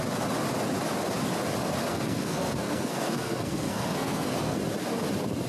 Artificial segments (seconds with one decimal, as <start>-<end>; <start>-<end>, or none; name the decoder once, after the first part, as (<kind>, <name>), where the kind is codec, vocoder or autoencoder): 1.9-4.6 (codec, SNAC)